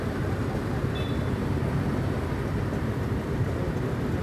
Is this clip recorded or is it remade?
recorded